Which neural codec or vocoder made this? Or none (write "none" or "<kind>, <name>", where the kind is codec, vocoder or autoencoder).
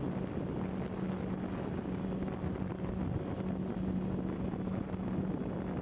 none